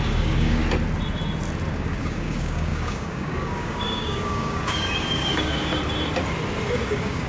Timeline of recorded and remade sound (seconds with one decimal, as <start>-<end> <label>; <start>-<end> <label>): 0.0-0.6 remade; 0.6-1.7 recorded; 1.7-5.7 remade; 5.7-6.7 recorded; 6.7-7.3 remade